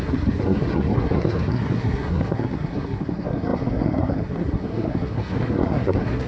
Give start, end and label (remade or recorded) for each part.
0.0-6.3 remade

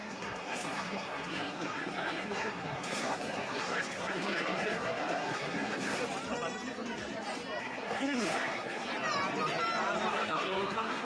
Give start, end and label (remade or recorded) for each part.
0.0-6.0 remade; 6.0-7.6 recorded; 7.6-8.9 remade; 8.9-10.1 recorded; 10.1-11.0 remade

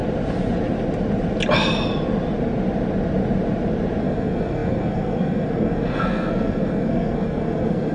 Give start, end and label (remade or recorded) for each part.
0.0-4.0 recorded; 4.0-7.9 remade

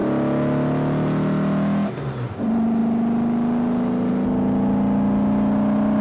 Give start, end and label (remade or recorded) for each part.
0.0-6.0 recorded

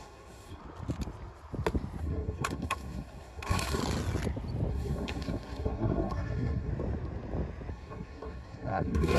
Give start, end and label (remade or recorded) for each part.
0.0-0.6 remade; 0.6-2.0 recorded; 2.0-3.8 remade; 3.8-4.7 recorded; 4.7-6.7 remade; 6.7-7.7 recorded; 7.7-9.2 remade

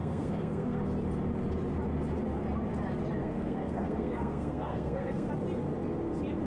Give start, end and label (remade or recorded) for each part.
0.0-0.8 remade; 0.8-3.2 recorded; 3.2-5.3 remade; 5.3-6.5 recorded

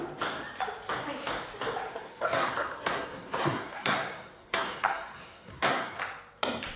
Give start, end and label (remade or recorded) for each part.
0.0-1.9 recorded; 1.9-6.0 remade; 6.0-6.8 recorded